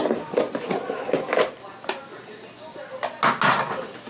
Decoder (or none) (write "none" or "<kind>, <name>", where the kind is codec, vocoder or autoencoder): none